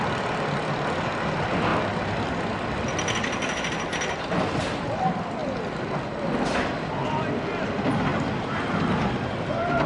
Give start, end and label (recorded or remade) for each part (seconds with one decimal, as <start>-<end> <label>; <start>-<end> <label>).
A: 0.0-9.9 recorded